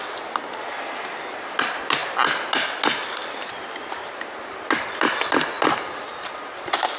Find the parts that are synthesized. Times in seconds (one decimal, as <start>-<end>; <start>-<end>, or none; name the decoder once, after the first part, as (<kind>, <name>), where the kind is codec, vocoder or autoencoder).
none